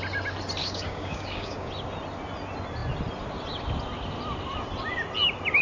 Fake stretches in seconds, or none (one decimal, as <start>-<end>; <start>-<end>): 0.6-1.7